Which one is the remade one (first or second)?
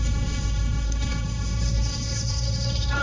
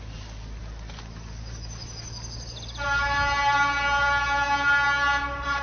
first